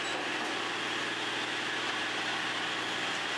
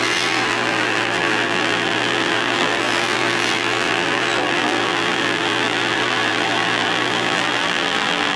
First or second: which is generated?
second